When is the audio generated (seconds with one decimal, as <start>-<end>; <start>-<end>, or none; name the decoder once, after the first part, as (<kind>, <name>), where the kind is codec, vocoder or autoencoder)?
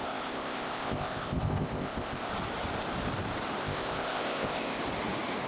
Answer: 0.0-2.3 (codec, ZipCodec); 3.6-4.8